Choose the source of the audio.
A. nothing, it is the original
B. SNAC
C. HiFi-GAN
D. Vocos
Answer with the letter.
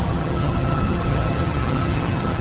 C